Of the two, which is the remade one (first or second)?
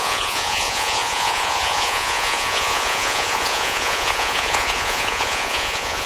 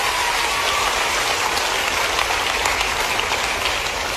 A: first